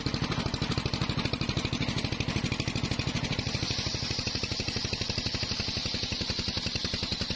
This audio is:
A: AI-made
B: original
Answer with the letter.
B